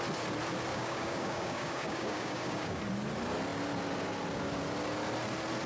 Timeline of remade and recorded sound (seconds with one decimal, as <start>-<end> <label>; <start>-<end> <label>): 0.0-0.7 recorded; 0.7-2.8 remade; 2.8-5.7 recorded